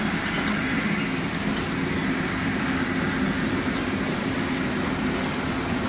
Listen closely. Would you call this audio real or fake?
real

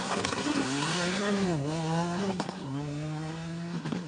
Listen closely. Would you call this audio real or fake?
fake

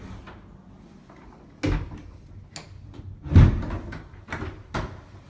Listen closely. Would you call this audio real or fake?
real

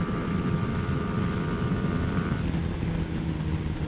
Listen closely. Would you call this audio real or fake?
fake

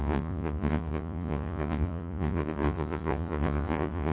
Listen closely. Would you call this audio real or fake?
fake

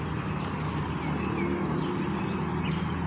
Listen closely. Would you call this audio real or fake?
real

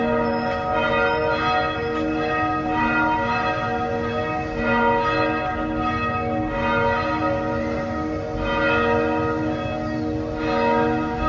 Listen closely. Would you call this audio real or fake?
real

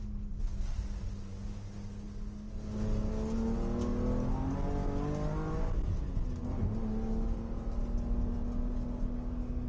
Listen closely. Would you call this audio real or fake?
real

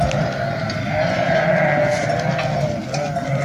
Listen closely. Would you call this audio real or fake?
real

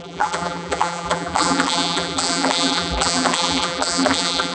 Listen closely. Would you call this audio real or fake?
fake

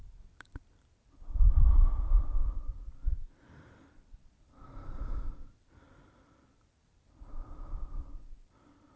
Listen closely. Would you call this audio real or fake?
fake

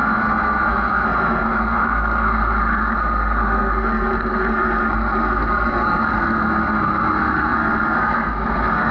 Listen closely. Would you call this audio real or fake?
fake